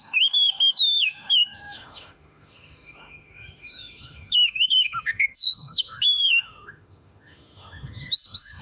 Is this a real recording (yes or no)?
no